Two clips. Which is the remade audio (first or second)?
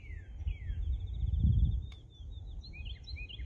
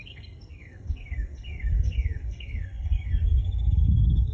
second